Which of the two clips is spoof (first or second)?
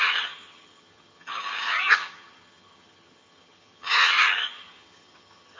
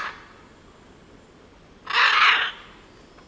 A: first